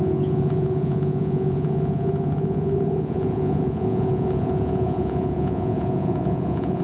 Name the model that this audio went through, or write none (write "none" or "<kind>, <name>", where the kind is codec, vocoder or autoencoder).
vocoder, Vocos